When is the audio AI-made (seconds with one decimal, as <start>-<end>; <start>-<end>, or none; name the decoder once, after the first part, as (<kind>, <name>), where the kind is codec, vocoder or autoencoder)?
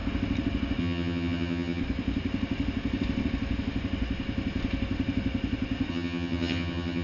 0.8-1.8 (vocoder, HiFi-GAN); 5.9-7.0